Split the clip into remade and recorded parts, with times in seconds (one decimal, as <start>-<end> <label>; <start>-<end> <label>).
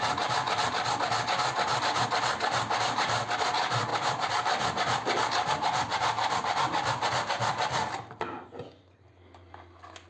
0.0-10.1 recorded